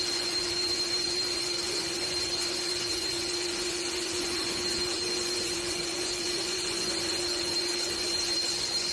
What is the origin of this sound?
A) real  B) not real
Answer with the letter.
B